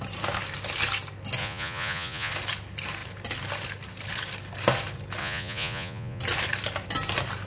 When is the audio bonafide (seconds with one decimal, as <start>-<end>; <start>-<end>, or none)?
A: 0.0-1.4; 2.3-5.2; 6.2-7.5